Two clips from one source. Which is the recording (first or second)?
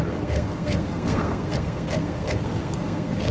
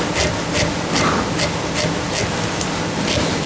second